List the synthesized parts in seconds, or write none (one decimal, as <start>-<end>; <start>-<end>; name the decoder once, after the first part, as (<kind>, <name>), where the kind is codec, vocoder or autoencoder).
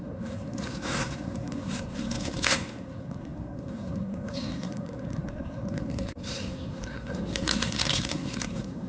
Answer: 0.0-8.9 (codec, SNAC)